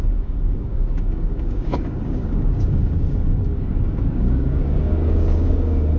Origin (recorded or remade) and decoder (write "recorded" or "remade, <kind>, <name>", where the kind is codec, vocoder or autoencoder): remade, codec, DAC